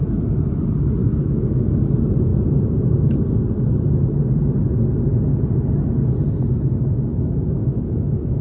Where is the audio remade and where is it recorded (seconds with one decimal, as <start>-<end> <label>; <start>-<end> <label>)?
0.0-1.0 recorded; 1.0-1.8 remade; 1.8-7.1 recorded; 7.1-8.4 remade